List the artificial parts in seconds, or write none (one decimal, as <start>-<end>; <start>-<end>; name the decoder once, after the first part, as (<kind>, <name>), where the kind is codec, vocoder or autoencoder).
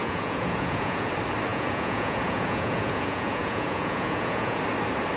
0.0-1.1 (vocoder, Vocos); 1.5-4.6